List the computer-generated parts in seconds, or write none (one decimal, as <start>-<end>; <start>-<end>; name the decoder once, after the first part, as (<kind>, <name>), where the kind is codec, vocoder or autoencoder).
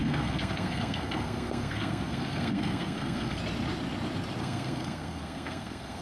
0.0-3.4 (codec, SNAC); 4.4-6.0